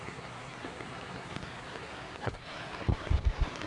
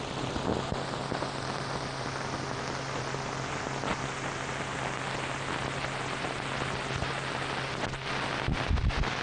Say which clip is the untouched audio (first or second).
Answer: second